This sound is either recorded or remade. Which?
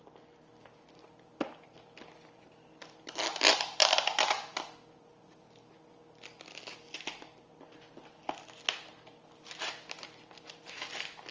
recorded